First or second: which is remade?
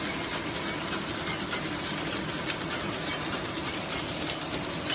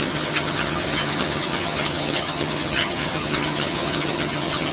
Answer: second